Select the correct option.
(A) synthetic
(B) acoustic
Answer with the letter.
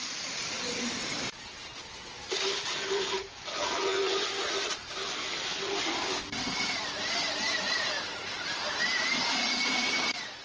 B